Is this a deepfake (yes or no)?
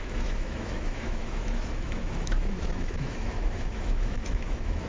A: yes